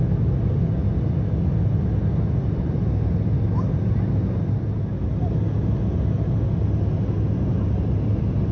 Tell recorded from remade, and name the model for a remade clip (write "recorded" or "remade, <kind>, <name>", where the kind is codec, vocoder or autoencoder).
recorded